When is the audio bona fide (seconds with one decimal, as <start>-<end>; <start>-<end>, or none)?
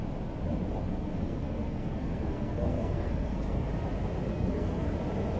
0.0-0.9; 3.7-4.3; 4.9-5.4